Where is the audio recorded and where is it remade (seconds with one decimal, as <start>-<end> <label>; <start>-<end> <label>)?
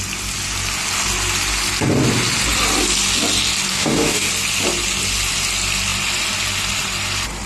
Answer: 0.0-3.7 recorded; 3.7-4.3 remade; 4.3-7.5 recorded